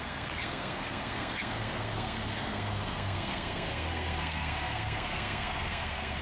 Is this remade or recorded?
remade